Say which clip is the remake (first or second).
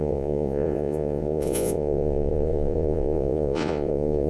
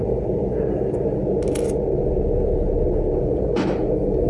first